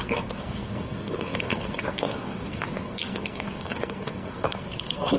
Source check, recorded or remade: remade